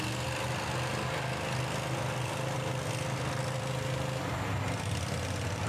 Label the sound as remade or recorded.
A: recorded